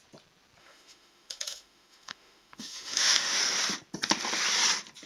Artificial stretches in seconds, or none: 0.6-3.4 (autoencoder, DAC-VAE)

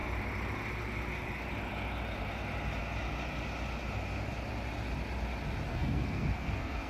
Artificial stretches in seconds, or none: 5.7-6.9 (codec, SNAC)